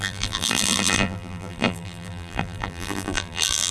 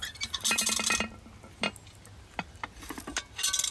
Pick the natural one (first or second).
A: second